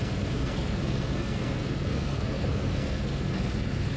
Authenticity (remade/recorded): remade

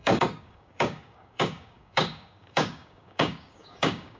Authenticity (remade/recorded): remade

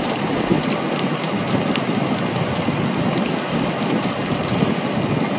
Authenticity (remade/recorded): recorded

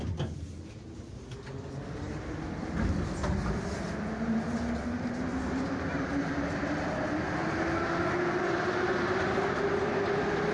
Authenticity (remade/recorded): recorded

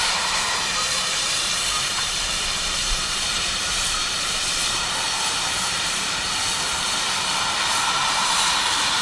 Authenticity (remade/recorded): remade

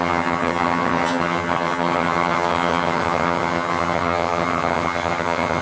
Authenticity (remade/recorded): remade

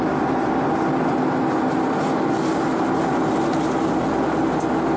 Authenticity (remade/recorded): recorded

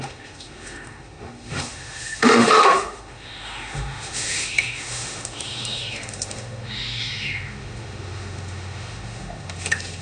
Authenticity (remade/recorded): remade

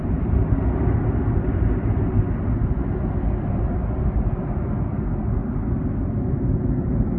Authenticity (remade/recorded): recorded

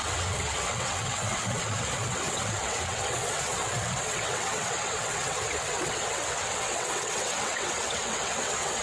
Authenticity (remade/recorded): remade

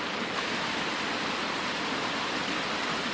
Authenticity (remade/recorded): recorded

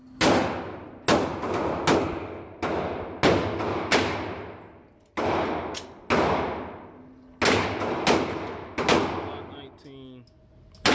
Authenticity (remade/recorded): recorded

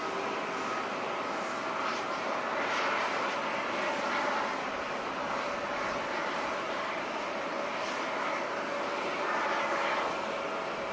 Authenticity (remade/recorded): recorded